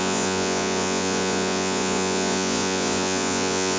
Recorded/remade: remade